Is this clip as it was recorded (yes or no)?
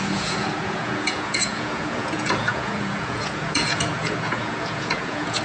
no